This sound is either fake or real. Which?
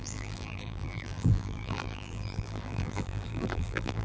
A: fake